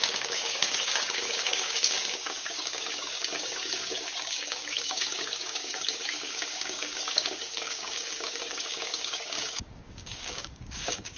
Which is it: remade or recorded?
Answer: remade